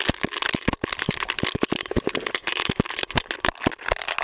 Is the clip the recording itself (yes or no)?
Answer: yes